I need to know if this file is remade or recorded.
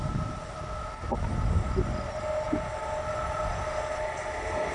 recorded